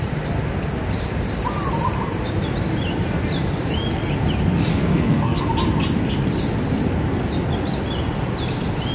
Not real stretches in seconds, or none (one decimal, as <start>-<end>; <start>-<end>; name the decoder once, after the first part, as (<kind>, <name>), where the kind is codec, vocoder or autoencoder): 4.7-5.4 (codec, SNAC)